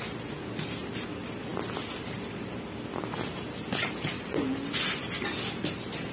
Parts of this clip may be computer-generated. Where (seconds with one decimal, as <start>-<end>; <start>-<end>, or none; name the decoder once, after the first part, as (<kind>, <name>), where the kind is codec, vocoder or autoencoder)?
none